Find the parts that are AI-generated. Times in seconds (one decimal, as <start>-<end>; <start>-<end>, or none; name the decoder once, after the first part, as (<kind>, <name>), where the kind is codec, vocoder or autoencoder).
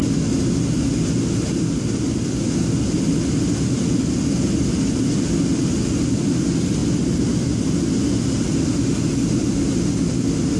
none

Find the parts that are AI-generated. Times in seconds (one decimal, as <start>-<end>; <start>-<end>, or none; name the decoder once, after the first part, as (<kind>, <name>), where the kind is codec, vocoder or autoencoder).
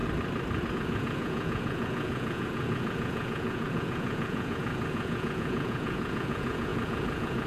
0.7-7.5 (vocoder, Vocos)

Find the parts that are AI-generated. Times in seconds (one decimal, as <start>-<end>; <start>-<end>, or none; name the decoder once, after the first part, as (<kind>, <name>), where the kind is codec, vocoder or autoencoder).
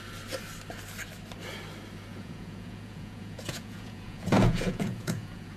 2.1-5.6 (vocoder, Vocos)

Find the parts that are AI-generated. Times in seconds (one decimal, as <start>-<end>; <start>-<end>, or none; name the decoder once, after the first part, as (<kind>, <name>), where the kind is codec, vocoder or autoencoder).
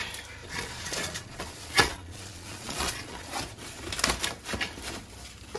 0.4-3.3 (vocoder, Vocos)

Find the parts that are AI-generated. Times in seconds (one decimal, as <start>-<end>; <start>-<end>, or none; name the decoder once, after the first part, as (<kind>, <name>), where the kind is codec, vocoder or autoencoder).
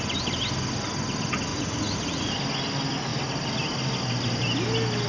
1.5-2.3 (vocoder, Vocos)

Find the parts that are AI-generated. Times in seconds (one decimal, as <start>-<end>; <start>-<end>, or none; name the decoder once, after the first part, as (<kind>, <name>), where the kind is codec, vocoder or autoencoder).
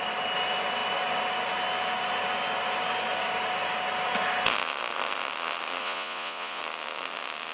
5.8-6.6 (vocoder, Vocos)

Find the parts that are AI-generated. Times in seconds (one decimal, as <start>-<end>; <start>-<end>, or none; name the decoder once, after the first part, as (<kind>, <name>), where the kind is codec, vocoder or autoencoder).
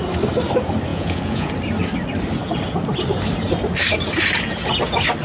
0.9-1.5 (vocoder, Vocos)